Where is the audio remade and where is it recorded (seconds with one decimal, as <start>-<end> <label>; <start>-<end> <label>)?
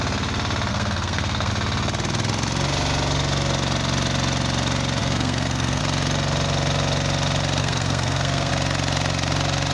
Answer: 0.0-0.7 recorded; 0.7-1.5 remade; 1.5-5.0 recorded; 5.0-5.8 remade; 5.8-7.6 recorded; 7.6-8.5 remade; 8.5-9.7 recorded